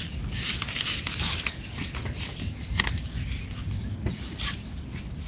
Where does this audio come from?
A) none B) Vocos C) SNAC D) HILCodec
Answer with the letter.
A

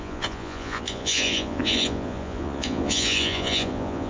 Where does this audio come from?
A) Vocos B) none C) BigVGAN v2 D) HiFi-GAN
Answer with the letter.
A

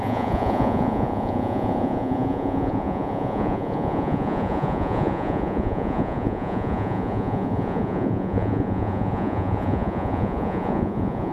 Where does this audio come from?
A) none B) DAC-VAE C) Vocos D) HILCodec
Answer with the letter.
C